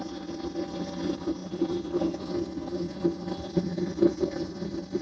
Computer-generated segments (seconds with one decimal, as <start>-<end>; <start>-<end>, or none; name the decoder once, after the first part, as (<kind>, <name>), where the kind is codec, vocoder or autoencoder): none